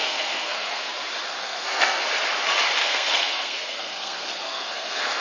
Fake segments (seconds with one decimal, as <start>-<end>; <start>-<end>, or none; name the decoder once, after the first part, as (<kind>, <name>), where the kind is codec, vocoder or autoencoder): 0.0-0.9 (codec, SNAC); 1.4-2.0; 2.8-5.2

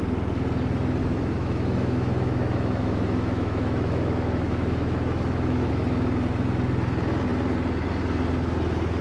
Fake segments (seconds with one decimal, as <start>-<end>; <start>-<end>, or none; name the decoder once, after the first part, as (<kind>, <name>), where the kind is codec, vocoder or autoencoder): 1.0-5.7 (autoencoder, DAC-VAE)

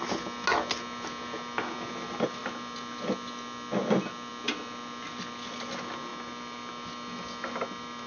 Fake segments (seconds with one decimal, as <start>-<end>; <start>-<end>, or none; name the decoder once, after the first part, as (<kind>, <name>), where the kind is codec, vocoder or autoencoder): none